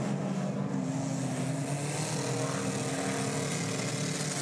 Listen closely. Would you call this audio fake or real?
real